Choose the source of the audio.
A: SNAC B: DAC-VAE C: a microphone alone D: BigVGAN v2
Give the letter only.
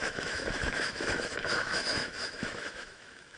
B